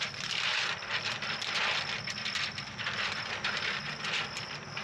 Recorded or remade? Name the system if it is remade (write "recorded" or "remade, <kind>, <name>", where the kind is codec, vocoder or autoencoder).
recorded